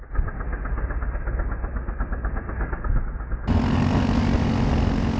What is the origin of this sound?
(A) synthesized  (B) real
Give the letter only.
B